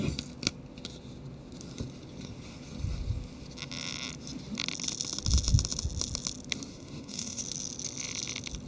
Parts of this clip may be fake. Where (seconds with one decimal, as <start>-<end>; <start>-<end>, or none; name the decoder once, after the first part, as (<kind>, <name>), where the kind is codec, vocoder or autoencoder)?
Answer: 6.7-7.4 (autoencoder, DAC-VAE)